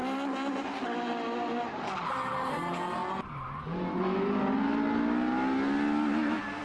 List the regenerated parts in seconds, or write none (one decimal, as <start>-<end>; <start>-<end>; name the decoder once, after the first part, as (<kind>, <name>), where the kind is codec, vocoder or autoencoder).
none